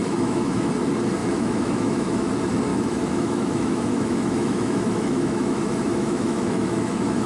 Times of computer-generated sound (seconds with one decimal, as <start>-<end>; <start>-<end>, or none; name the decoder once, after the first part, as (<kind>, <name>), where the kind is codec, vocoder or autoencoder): 0.0-0.7 (autoencoder, DAC-VAE); 1.2-2.3; 2.7-7.3